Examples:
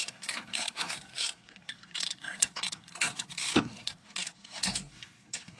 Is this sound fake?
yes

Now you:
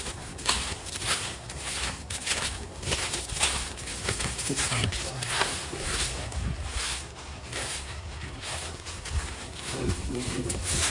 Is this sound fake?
yes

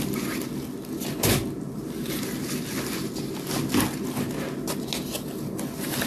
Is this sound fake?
no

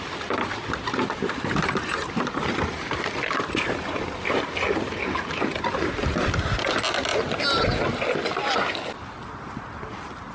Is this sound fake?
no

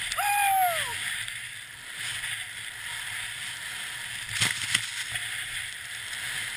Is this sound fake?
no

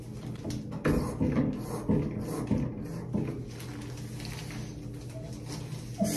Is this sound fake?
no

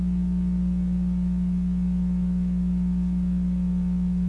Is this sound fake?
no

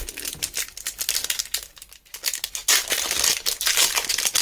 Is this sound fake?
no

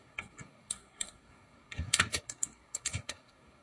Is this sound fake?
yes